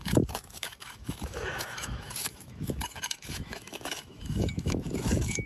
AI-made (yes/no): yes